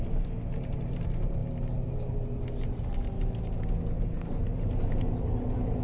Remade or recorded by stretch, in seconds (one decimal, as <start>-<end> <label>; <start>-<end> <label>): 0.0-5.8 recorded